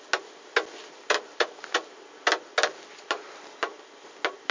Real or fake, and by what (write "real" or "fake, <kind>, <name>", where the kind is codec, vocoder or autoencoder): real